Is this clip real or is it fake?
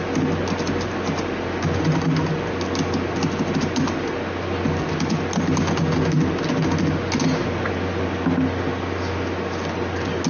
real